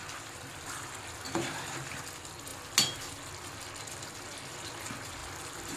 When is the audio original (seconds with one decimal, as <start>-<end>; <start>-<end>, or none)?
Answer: 0.0-5.8